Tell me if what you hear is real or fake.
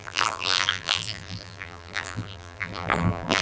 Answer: fake